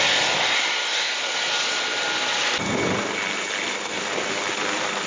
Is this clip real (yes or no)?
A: yes